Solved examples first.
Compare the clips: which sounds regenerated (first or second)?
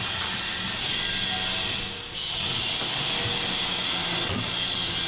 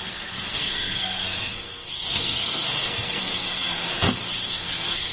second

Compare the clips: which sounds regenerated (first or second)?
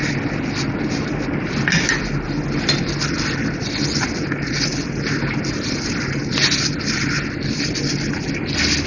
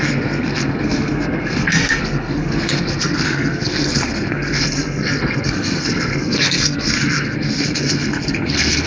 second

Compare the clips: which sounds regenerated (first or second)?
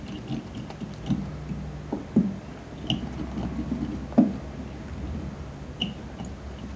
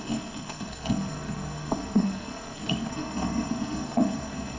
second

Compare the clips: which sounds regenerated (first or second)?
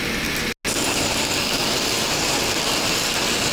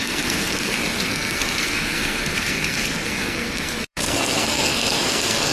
second